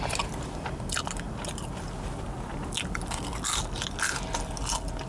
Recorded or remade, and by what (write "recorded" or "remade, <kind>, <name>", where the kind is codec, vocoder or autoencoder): recorded